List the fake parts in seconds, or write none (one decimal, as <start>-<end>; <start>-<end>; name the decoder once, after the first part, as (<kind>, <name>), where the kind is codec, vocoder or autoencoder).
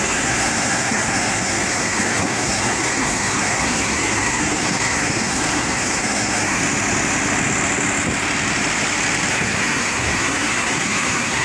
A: 0.0-6.6 (codec, SNAC); 9.3-11.4